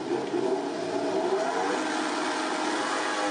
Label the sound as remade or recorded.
recorded